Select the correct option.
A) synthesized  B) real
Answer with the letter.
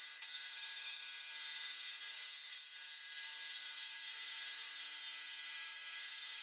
A